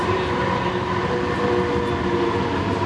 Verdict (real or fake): real